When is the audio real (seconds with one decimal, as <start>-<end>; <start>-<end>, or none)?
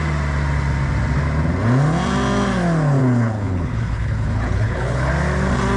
0.0-3.0; 5.1-5.8